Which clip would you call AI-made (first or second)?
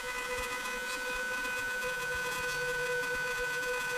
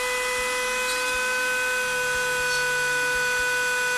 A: first